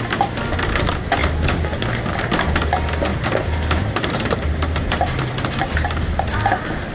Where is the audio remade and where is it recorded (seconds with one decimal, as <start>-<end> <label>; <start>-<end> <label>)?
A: 0.0-3.1 recorded; 3.1-6.2 remade; 6.2-6.9 recorded